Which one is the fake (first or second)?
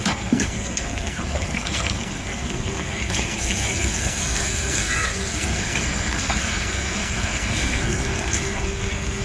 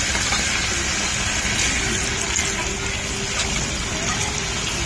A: first